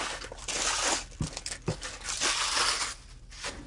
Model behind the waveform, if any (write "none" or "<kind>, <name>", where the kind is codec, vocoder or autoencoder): none